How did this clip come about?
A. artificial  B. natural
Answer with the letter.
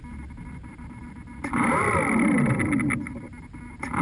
B